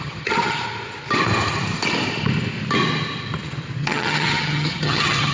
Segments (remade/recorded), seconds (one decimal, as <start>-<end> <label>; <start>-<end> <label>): 0.0-0.6 remade; 0.6-3.8 recorded; 3.8-5.3 remade